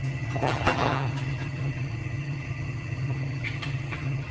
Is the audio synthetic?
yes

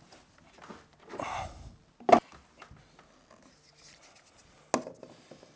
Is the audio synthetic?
no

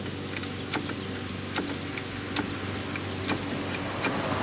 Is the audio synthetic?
no